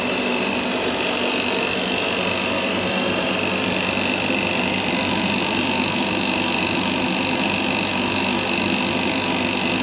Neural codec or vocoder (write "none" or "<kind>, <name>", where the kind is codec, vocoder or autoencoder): none